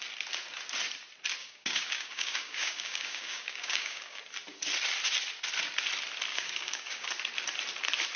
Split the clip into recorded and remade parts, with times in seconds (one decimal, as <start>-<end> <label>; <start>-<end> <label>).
0.0-1.4 recorded; 1.4-4.2 remade; 4.2-6.3 recorded; 6.3-7.1 remade; 7.1-8.2 recorded